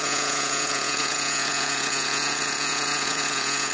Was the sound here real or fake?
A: fake